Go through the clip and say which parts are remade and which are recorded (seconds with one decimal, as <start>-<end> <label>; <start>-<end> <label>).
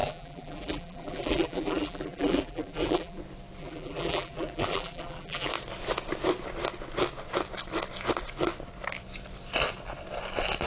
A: 0.0-3.2 remade; 3.2-3.6 recorded; 3.6-5.5 remade; 5.5-10.7 recorded